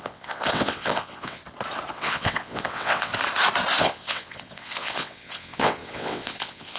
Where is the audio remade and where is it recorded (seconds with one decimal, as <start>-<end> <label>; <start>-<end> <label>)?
0.0-1.4 remade; 1.4-1.9 recorded; 1.9-3.1 remade; 3.1-3.8 recorded; 3.8-6.8 remade